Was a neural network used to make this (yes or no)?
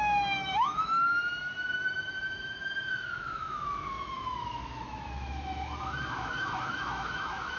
yes